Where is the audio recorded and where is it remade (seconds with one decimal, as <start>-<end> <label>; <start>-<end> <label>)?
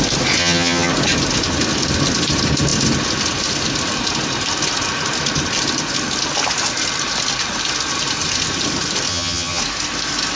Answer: 0.0-0.4 recorded; 0.4-0.9 remade; 0.9-9.1 recorded; 9.1-9.6 remade; 9.6-10.4 recorded